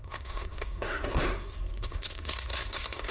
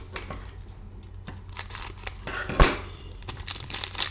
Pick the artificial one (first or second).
first